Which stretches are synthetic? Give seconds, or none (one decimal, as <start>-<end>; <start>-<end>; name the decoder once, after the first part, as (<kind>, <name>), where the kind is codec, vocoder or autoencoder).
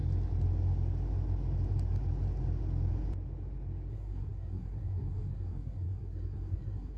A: 3.9-7.0 (codec, SNAC)